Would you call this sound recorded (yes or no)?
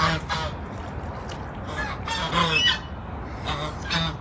yes